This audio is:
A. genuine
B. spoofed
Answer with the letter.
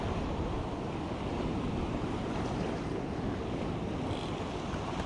A